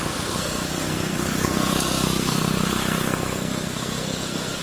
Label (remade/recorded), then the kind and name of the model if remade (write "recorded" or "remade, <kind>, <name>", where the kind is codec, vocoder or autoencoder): remade, codec, SNAC